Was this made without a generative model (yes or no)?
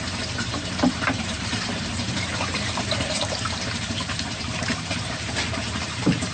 no